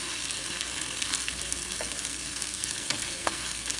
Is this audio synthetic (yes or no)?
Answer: yes